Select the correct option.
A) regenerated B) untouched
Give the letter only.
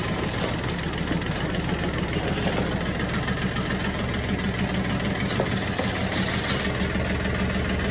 B